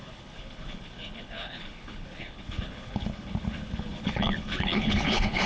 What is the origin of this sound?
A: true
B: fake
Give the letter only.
B